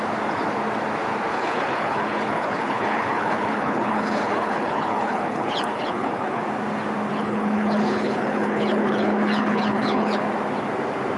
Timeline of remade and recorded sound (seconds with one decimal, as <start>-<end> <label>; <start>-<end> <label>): 0.0-1.3 recorded; 1.3-6.4 remade; 6.4-7.1 recorded; 7.1-10.2 remade; 10.2-11.2 recorded